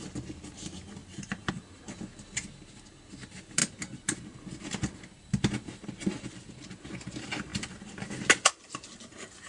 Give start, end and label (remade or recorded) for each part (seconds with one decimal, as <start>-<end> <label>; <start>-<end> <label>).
0.0-1.0 recorded; 1.0-1.5 remade; 1.5-9.5 recorded